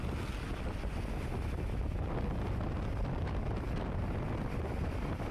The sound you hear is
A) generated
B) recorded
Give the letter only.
B